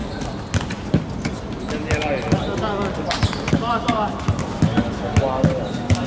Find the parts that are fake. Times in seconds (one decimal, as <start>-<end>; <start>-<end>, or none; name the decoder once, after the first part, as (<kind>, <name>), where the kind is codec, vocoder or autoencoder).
none